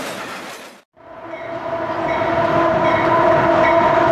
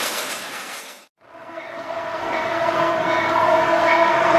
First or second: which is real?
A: first